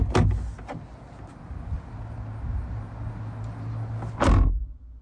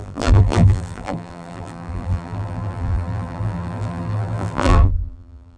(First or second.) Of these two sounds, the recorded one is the first